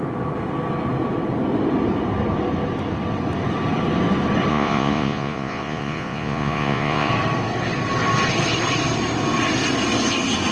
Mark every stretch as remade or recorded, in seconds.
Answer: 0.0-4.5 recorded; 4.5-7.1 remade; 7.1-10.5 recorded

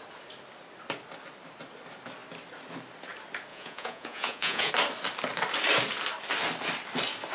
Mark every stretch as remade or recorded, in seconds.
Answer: 0.0-3.5 recorded; 3.5-4.7 remade; 4.7-7.3 recorded